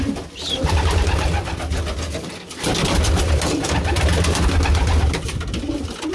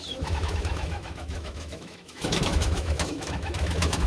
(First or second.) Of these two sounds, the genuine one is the first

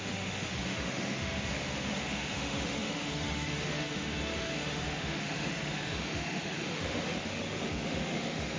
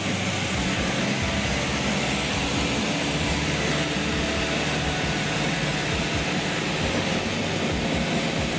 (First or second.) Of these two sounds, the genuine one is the second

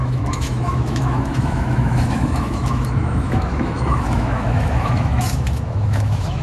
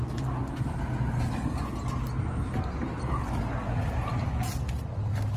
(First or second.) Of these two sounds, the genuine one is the second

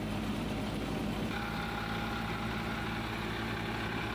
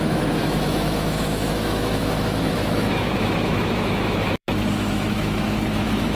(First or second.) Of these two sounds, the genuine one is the first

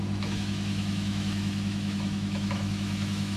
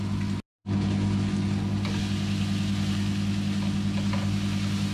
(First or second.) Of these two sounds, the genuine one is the second